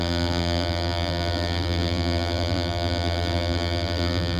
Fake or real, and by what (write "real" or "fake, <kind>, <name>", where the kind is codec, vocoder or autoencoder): fake, vocoder, BigVGAN v2